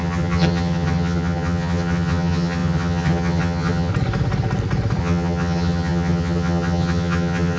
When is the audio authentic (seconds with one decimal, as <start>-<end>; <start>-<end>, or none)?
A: 3.9-5.0